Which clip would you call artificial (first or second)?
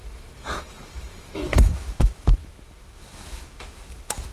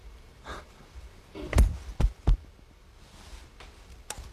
first